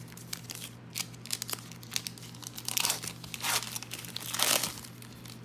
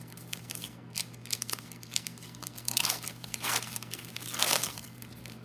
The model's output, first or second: second